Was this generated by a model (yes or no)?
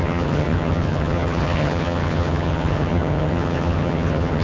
yes